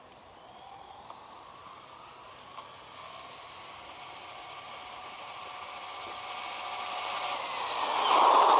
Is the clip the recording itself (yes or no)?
no